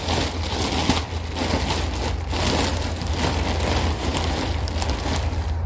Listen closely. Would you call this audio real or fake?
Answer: real